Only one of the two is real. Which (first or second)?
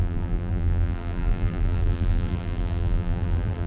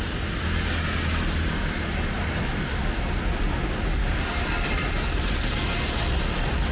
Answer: second